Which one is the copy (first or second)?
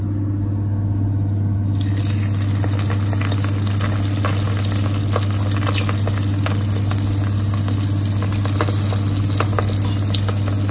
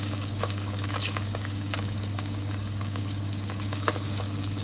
second